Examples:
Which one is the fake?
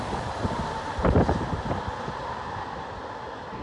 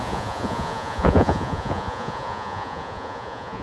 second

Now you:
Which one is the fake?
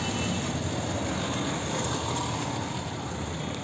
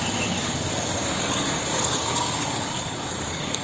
second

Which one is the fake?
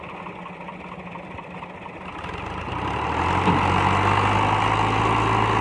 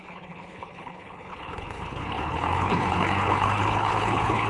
second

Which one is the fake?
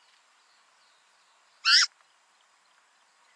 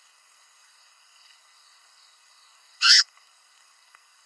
second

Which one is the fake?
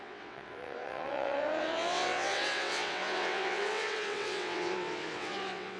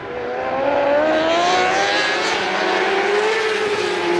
first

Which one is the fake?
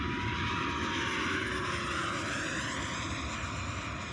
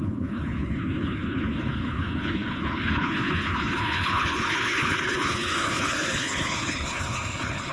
second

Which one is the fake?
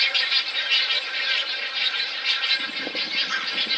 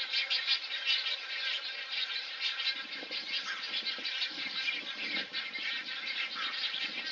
first